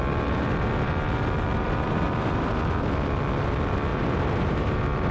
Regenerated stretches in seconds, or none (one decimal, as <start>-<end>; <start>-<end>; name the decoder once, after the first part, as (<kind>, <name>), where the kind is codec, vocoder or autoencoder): 1.5-2.5 (vocoder, BigVGAN v2); 3.9-5.1

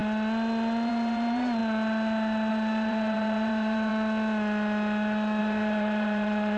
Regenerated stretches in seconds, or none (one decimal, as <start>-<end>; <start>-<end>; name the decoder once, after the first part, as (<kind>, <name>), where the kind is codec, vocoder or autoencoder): 0.9-1.6 (vocoder, BigVGAN v2); 2.5-3.9; 5.4-6.6

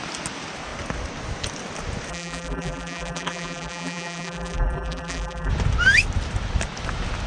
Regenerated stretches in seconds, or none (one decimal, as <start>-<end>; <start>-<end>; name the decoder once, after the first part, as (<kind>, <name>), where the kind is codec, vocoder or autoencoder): 2.1-5.5 (vocoder, BigVGAN v2)

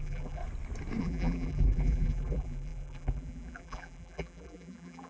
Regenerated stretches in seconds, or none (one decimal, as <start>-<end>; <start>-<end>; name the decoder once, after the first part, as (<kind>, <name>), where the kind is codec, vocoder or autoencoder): 0.0-0.4 (vocoder, BigVGAN v2); 1.0-5.1

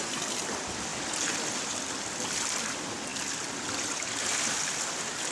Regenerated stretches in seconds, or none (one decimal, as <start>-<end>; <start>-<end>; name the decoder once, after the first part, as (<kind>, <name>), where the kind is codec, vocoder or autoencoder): 0.9-2.2 (vocoder, BigVGAN v2)

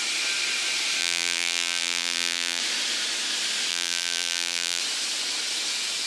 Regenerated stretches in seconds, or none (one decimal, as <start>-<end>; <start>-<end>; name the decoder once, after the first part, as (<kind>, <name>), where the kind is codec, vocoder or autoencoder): 1.0-2.6 (vocoder, BigVGAN v2); 3.7-4.8

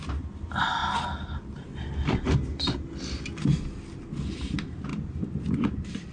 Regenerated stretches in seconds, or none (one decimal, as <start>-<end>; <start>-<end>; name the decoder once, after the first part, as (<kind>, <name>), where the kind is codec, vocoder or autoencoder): none